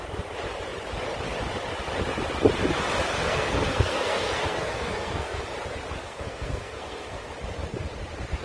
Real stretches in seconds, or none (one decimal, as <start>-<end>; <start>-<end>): 0.0-3.1; 5.4-6.0; 7.3-8.4